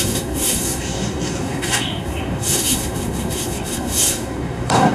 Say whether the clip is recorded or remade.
remade